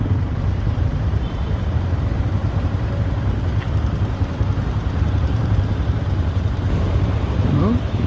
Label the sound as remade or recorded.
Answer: remade